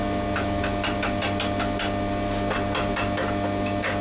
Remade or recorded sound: recorded